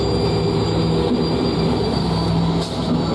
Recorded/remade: recorded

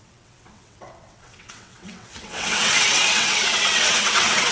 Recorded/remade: remade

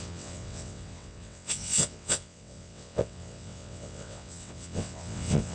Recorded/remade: remade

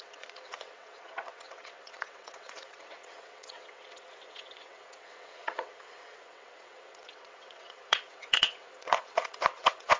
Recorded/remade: remade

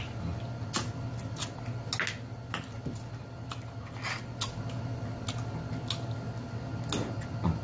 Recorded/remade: recorded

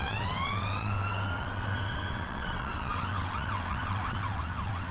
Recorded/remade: remade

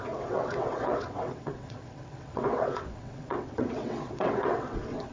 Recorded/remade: remade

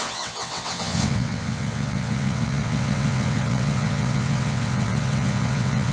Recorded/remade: remade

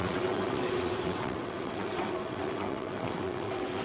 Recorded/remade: remade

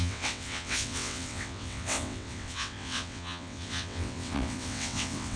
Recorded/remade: remade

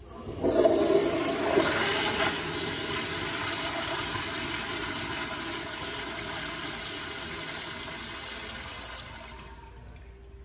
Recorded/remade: recorded